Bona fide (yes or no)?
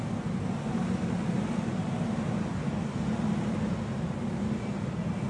yes